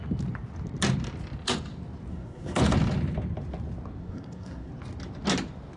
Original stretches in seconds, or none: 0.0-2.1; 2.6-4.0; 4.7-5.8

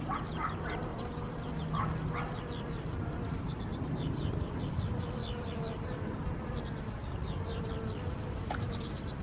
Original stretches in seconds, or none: 0.0-3.7; 4.5-7.1; 7.7-9.2